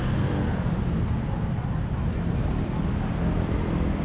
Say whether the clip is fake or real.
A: real